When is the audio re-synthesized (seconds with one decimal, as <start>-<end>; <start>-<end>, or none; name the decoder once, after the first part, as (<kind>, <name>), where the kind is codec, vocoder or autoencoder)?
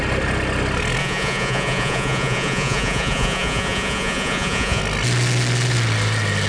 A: 1.0-4.8 (vocoder, Vocos)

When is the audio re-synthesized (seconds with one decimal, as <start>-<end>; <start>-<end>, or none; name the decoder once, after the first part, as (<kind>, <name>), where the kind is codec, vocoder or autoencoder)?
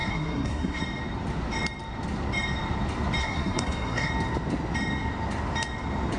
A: 0.0-0.8 (codec, SNAC); 3.2-4.1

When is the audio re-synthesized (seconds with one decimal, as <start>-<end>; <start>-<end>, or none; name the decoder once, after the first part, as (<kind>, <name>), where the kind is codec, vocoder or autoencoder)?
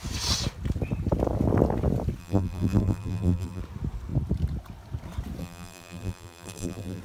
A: 2.2-3.6 (vocoder, BigVGAN v2); 5.4-7.0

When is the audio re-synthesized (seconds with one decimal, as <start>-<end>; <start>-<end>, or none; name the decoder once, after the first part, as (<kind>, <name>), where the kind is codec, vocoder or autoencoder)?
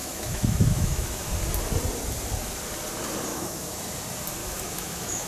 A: 0.0-1.2 (autoencoder, DAC-VAE); 3.3-3.8; 4.4-5.3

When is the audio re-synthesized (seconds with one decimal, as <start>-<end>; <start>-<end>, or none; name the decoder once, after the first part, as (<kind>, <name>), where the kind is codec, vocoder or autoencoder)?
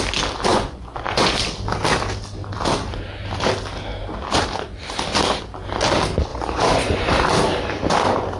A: 0.5-1.4 (vocoder, Vocos); 6.3-7.3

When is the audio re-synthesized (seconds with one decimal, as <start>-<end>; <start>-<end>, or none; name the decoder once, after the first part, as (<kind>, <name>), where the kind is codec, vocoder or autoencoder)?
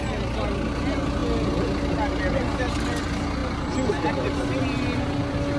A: none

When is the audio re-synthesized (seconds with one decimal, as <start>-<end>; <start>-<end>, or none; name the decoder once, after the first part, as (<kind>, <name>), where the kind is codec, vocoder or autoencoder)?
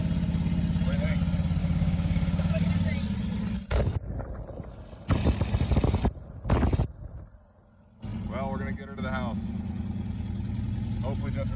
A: 1.6-2.7 (codec, DAC)